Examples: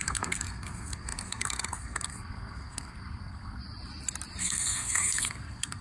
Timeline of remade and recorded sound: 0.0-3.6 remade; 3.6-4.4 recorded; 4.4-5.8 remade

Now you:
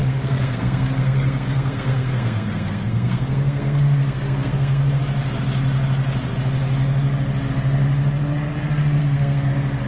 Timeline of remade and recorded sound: 0.0-5.0 remade; 5.0-9.0 recorded; 9.0-9.5 remade; 9.5-9.9 recorded

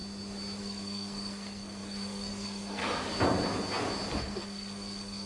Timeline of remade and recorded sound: 0.0-0.6 recorded; 0.6-2.8 remade; 2.8-4.2 recorded; 4.2-5.3 remade

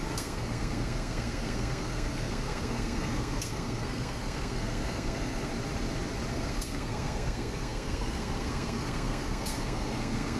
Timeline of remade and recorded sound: 0.0-5.5 remade; 5.5-6.3 recorded; 6.3-10.4 remade

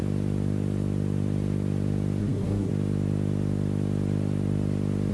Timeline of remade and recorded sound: 0.0-2.2 recorded; 2.2-2.7 remade; 2.7-5.1 recorded

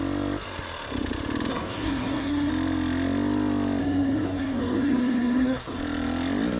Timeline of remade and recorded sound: 0.0-1.5 recorded; 1.5-2.5 remade; 2.5-3.8 recorded; 3.8-5.8 remade; 5.8-6.6 recorded

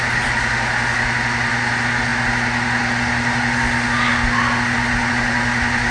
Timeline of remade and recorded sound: 0.0-5.9 recorded

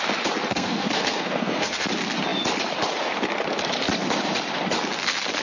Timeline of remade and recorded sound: 0.0-0.5 recorded; 0.5-1.8 remade; 1.8-5.4 recorded